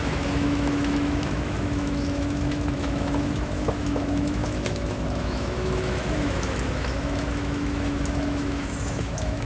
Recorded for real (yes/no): no